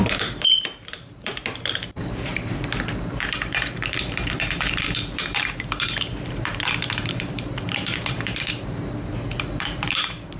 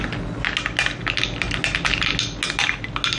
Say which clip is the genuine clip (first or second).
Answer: second